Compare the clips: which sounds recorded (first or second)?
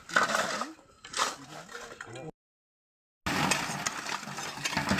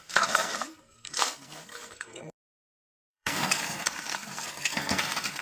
first